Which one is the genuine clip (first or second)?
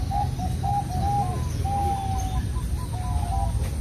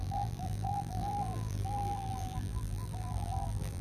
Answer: first